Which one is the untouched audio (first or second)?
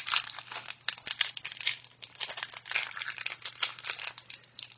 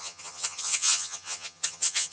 first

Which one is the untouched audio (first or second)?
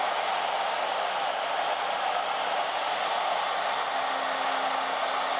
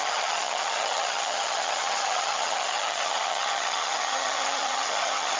first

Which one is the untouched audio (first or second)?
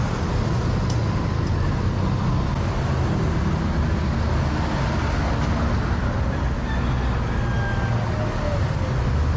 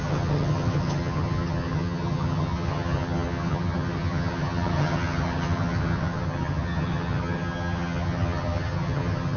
first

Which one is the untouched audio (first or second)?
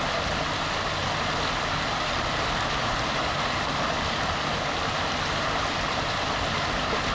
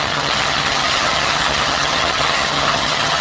first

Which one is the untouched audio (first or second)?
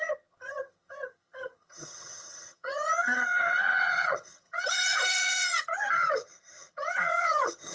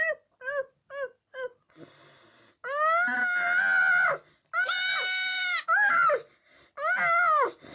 second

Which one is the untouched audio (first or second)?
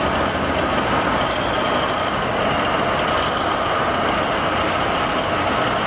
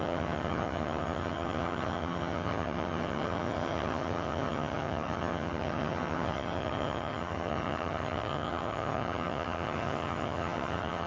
first